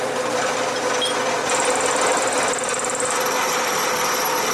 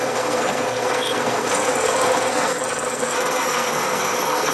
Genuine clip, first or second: first